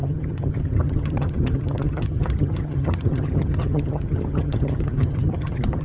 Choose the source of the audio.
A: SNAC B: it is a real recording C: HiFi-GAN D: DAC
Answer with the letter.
C